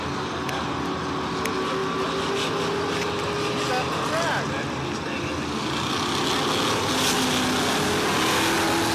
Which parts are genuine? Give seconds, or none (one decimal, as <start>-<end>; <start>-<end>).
0.0-8.9